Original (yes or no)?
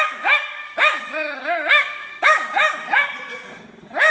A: no